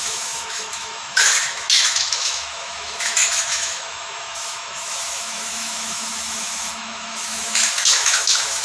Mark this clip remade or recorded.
remade